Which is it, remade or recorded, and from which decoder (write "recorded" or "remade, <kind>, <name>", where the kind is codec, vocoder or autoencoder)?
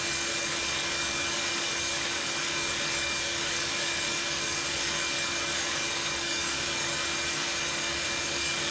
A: remade, codec, DAC